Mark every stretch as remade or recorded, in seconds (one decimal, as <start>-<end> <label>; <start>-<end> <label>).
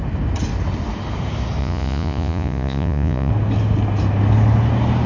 0.0-1.6 recorded; 1.6-3.3 remade; 3.3-5.1 recorded